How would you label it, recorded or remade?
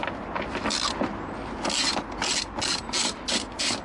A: recorded